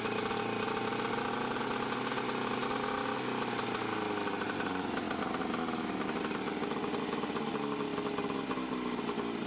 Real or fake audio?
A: real